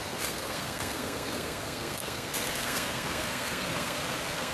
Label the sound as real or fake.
fake